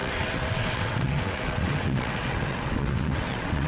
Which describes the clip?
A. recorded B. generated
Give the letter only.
B